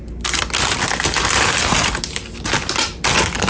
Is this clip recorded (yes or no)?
yes